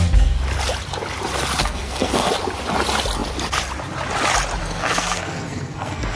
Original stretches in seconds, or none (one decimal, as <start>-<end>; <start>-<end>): 0.0-1.6; 2.3-4.6